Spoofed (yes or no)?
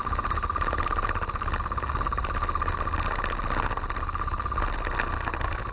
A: no